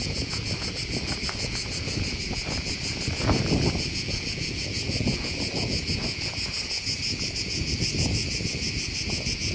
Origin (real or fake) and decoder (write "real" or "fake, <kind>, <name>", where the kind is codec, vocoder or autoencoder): fake, vocoder, Vocos